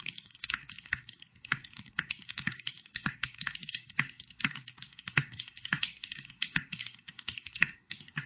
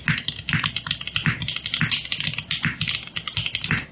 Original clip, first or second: second